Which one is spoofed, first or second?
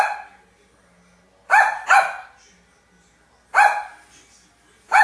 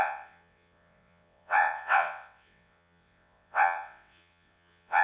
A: second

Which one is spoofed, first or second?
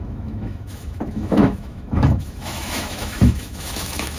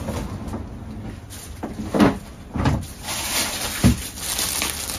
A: first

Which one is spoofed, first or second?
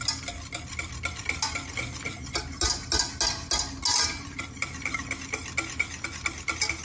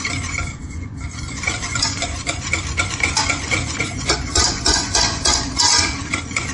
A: second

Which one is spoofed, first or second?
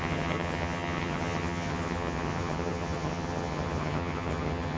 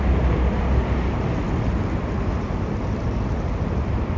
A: first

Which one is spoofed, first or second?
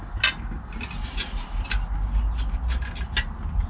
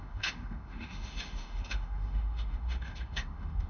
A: second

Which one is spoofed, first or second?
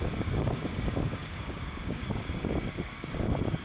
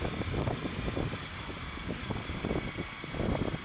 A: first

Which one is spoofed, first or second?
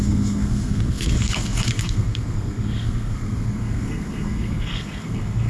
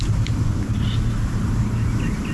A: first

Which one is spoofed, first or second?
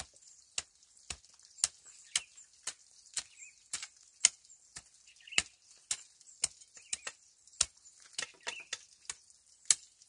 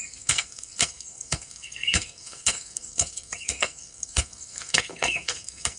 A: second